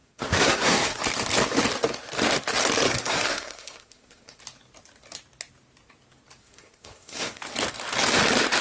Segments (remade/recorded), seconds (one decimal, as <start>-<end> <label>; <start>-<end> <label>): 0.0-1.0 remade; 1.0-2.9 recorded; 2.9-4.4 remade; 4.4-6.4 recorded; 6.4-7.4 remade; 7.4-8.6 recorded